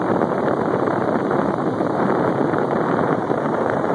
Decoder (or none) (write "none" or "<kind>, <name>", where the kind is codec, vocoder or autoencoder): vocoder, BigVGAN v2